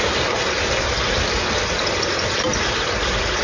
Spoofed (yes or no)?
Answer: no